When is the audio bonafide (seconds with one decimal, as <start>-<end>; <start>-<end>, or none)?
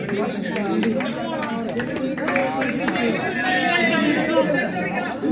0.0-5.3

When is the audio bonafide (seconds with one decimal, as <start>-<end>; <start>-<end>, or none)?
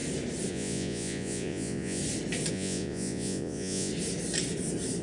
0.0-0.5; 2.0-2.5; 3.9-5.0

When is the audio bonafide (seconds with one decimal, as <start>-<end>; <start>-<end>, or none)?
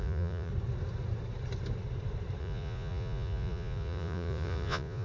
0.5-2.4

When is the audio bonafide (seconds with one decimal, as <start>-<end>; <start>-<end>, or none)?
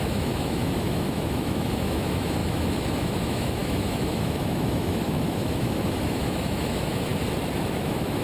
7.1-7.6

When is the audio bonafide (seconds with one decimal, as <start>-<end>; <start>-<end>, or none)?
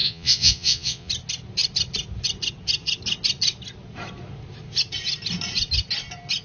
1.1-6.4